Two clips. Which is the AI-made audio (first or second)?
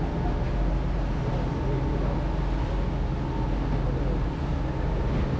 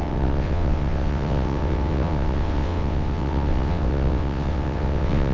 second